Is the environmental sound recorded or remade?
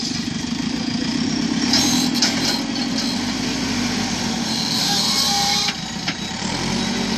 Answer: remade